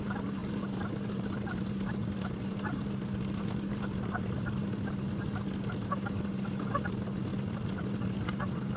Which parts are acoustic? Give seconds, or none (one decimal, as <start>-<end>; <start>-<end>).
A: 0.0-8.8